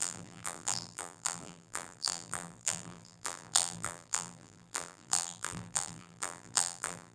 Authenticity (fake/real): fake